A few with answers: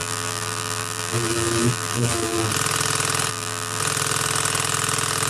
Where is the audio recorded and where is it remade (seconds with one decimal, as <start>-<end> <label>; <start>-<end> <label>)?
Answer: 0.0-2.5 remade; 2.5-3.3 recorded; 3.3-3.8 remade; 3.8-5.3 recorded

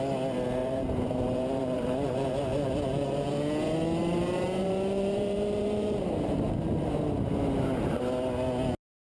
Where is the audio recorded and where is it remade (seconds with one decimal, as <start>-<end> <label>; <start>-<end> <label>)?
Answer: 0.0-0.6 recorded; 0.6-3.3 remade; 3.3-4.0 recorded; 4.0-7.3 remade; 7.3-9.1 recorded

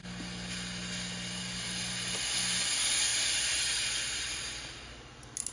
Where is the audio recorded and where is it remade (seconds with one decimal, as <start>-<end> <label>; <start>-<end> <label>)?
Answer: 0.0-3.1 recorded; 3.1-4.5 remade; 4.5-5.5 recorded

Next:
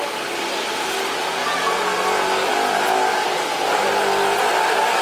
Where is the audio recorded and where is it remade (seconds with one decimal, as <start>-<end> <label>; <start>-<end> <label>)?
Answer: 0.0-5.0 recorded

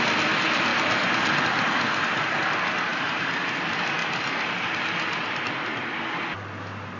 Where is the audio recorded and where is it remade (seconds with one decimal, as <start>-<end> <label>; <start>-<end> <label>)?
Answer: 0.0-2.9 recorded; 2.9-3.6 remade; 3.6-7.0 recorded

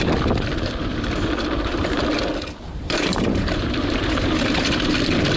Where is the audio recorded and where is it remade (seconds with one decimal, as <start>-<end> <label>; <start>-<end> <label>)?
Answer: 0.0-2.7 recorded; 2.7-5.0 remade; 5.0-5.4 recorded

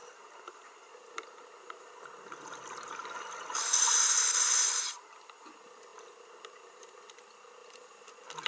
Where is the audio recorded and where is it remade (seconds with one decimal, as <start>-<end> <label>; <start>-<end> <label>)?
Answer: 0.0-1.4 remade; 1.4-7.6 recorded; 7.6-8.5 remade

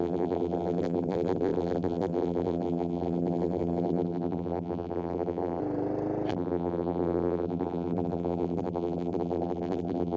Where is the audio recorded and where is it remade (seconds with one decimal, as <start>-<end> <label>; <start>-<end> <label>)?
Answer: 0.0-5.6 remade; 5.6-6.3 recorded; 6.3-10.2 remade